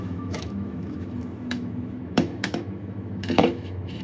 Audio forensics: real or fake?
fake